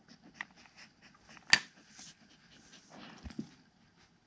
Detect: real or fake real